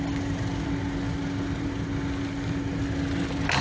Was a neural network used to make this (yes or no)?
no